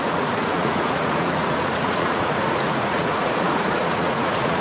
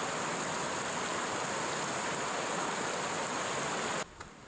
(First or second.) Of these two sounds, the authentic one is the second